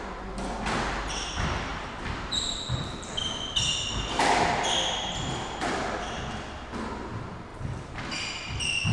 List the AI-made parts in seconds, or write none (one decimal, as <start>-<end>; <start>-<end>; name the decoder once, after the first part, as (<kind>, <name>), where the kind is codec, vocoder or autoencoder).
1.7-3.6 (vocoder, BigVGAN v2); 7.5-8.0